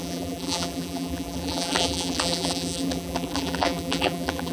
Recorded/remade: remade